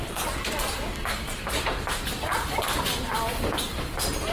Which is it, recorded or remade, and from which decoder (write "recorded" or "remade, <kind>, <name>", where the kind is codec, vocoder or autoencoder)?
recorded